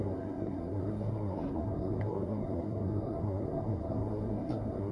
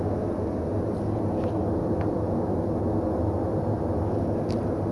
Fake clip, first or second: first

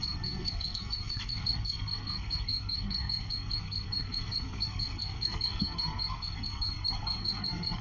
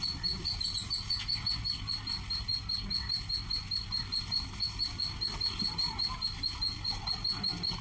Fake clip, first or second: first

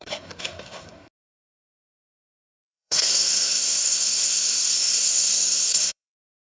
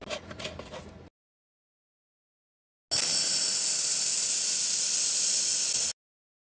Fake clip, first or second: first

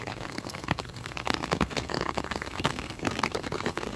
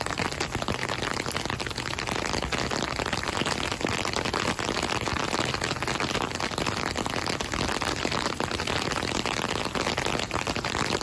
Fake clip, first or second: first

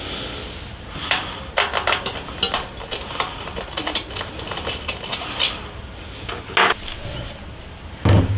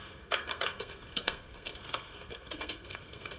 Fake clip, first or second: second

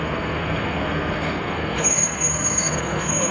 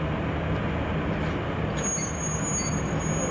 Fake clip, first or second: first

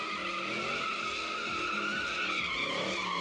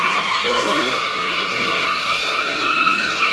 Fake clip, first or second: second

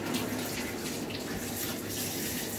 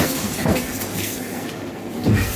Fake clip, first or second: second